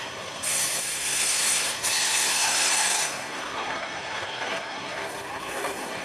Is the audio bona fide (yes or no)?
no